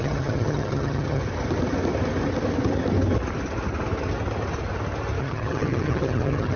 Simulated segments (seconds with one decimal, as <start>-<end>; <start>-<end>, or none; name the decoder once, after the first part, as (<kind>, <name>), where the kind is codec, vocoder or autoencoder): 0.0-1.2 (vocoder, HiFi-GAN); 5.2-6.6